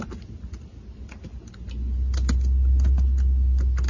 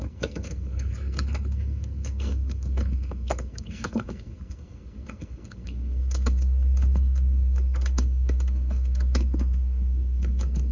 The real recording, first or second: first